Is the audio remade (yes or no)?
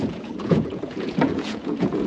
yes